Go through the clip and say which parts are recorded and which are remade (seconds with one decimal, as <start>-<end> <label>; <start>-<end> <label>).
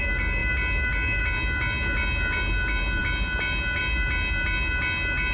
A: 0.0-5.3 recorded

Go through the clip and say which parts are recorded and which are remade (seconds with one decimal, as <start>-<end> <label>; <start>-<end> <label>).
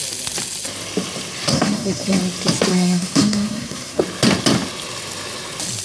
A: 0.0-1.5 recorded; 1.5-2.2 remade; 2.2-2.7 recorded; 2.7-4.0 remade; 4.0-5.8 recorded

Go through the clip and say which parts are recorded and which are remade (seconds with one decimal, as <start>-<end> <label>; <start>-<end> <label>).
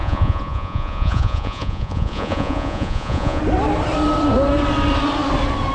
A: 0.0-3.4 remade; 3.4-5.7 recorded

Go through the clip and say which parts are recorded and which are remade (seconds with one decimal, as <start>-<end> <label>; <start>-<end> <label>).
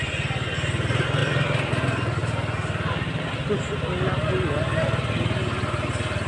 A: 0.0-6.3 recorded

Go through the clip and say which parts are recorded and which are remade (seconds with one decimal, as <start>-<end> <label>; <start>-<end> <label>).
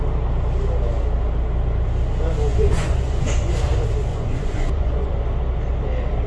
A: 0.0-2.5 recorded; 2.5-3.5 remade; 3.5-4.1 recorded; 4.1-5.1 remade; 5.1-6.3 recorded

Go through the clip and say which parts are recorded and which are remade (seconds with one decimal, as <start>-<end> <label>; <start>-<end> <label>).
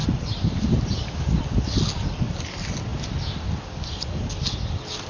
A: 0.0-5.1 recorded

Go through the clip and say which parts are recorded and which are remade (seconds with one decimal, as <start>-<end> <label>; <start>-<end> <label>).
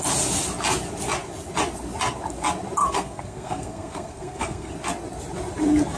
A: 0.0-2.8 recorded; 2.8-4.7 remade; 4.7-6.0 recorded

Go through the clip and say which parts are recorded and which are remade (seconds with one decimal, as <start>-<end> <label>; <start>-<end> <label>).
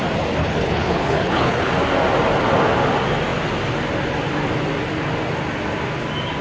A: 0.0-0.4 recorded; 0.4-1.7 remade; 1.7-6.4 recorded